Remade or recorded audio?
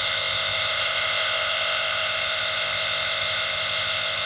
remade